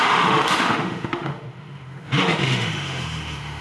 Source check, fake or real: fake